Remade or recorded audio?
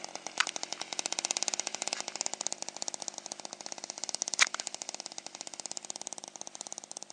recorded